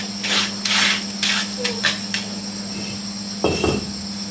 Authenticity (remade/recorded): recorded